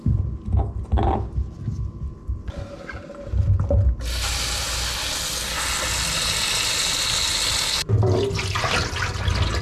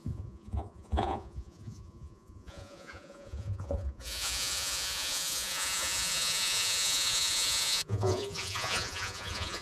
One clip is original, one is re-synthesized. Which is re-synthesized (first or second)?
second